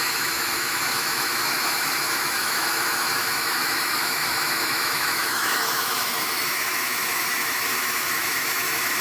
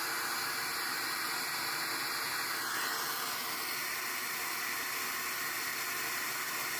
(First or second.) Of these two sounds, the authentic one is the second